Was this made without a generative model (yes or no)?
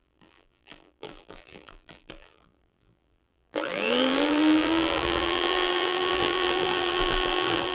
no